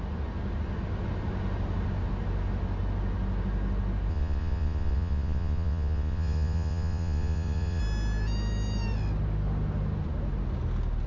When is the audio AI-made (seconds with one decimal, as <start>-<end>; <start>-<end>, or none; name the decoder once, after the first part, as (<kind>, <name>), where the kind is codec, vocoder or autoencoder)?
4.1-7.8 (vocoder, Vocos)